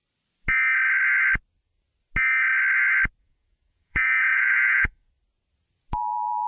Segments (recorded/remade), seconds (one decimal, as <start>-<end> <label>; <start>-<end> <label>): 0.0-3.2 recorded; 3.2-5.1 remade; 5.1-6.5 recorded